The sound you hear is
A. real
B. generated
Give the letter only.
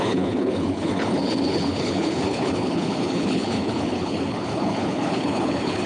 B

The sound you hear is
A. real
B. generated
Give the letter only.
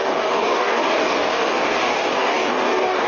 B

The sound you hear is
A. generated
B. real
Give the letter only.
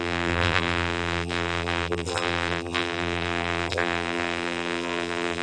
A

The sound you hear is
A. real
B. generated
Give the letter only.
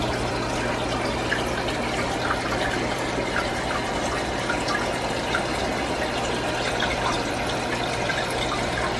A